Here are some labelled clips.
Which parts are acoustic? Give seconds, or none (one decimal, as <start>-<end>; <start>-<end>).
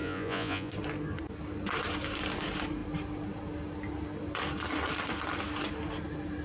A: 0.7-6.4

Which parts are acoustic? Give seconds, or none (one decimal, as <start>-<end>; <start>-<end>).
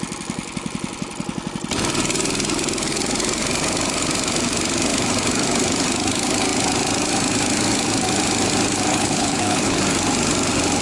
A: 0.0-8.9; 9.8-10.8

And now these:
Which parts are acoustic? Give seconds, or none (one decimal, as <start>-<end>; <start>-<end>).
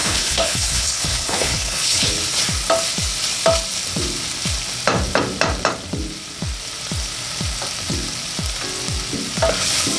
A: 2.1-10.0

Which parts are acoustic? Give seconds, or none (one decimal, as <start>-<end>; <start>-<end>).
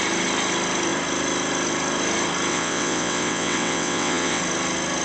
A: 0.0-2.5; 4.4-5.0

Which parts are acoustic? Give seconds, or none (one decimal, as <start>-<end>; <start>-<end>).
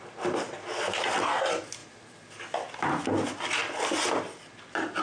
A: 0.0-5.0